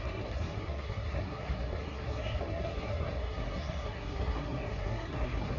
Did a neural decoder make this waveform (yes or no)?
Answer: yes